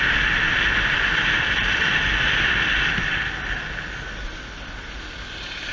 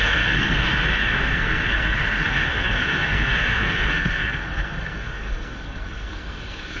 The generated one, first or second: second